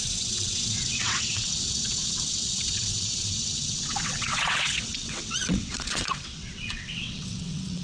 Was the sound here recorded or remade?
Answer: remade